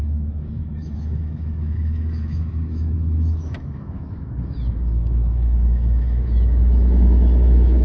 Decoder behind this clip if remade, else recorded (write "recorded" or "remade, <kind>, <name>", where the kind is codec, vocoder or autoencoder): remade, autoencoder, DAC-VAE